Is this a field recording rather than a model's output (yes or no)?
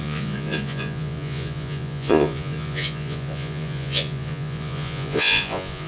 no